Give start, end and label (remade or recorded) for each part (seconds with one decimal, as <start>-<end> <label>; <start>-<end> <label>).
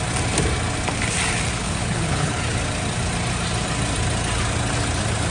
0.0-1.6 recorded; 1.6-2.4 remade; 2.4-5.3 recorded